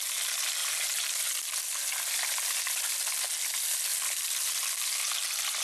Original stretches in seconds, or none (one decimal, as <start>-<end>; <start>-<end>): 0.0-3.9; 4.5-5.6